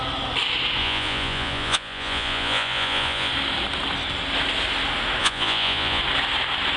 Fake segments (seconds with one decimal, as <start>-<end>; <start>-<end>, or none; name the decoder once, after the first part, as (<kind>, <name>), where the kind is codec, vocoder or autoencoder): 0.8-3.3 (vocoder, Vocos); 5.2-6.0

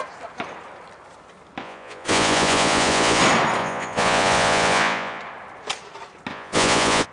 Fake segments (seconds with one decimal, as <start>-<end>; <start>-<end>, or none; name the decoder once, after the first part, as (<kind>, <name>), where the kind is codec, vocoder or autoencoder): 1.6-3.2 (vocoder, Vocos); 3.6-5.2; 6.3-7.1

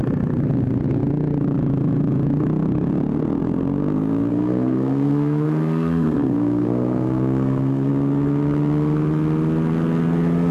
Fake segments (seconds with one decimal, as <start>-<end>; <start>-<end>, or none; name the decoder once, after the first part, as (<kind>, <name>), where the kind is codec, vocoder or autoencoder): 4.3-7.9 (codec, SNAC)

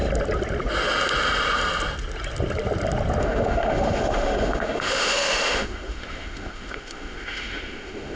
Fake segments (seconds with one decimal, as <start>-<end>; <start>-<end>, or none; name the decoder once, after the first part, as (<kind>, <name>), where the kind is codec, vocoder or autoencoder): 3.2-8.2 (autoencoder, DAC-VAE)